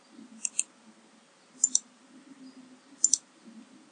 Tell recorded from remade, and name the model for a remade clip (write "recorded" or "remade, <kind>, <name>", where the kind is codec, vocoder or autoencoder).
recorded